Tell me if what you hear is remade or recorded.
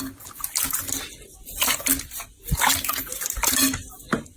recorded